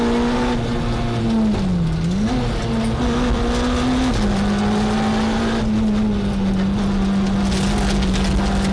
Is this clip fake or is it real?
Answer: real